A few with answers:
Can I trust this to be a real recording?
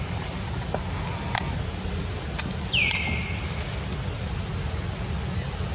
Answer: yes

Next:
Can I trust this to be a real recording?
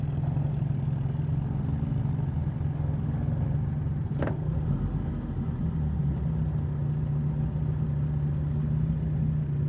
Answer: yes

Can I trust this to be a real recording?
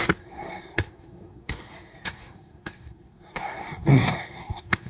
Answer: no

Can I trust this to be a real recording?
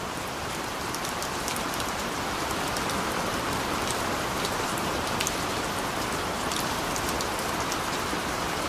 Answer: no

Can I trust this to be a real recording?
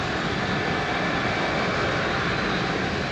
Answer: yes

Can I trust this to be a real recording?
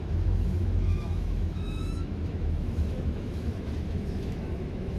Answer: no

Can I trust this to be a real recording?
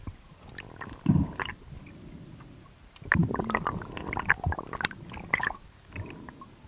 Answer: yes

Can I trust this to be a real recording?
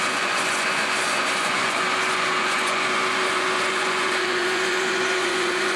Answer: no